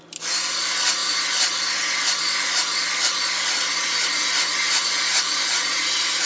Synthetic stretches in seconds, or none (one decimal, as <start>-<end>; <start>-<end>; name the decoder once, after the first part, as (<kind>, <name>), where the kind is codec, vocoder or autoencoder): none